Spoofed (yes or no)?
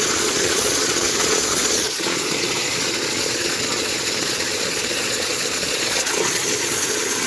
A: yes